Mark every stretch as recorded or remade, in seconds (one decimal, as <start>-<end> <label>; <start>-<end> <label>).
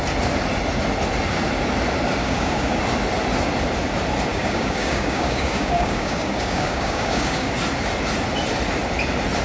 0.0-2.2 recorded; 2.2-2.8 remade; 2.8-4.3 recorded; 4.3-7.5 remade; 7.5-9.4 recorded